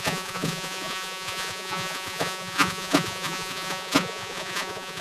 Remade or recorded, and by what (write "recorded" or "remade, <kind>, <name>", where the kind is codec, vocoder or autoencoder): remade, vocoder, Vocos